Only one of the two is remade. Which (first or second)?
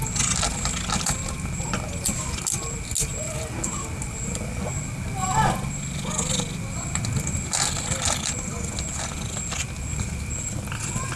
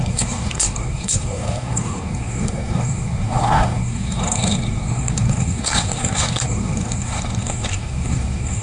second